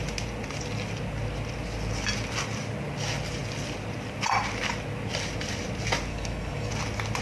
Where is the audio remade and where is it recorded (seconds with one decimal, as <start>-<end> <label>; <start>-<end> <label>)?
0.0-6.1 recorded; 6.1-6.7 remade; 6.7-7.2 recorded